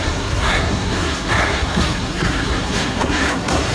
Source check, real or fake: fake